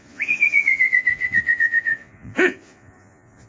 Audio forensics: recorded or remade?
remade